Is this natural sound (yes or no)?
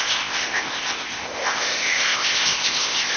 no